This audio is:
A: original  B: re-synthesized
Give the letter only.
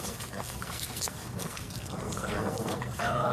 B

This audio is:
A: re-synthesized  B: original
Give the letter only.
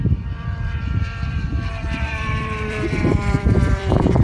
A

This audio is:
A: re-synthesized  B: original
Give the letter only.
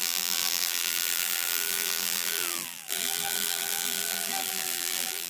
A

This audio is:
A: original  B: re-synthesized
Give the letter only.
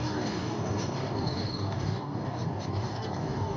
B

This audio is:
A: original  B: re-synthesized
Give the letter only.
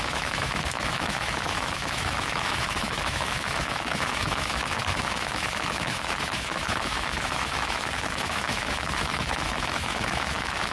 B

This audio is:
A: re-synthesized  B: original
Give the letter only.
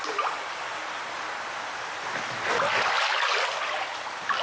B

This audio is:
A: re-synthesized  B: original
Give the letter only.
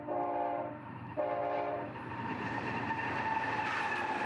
A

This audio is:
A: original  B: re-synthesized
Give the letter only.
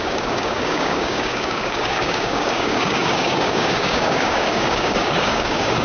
B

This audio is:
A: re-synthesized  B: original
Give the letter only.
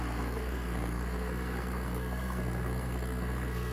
A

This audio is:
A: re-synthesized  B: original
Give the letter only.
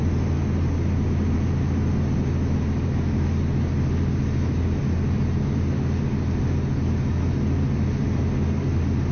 B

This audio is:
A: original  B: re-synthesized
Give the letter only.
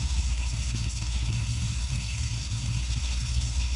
B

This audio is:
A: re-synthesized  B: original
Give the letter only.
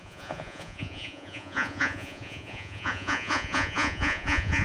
A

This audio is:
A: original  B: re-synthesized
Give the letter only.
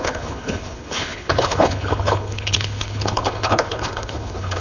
B